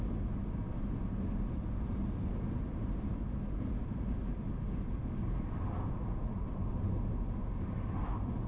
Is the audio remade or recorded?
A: recorded